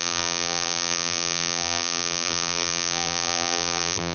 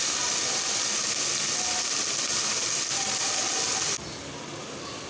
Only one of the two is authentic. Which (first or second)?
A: second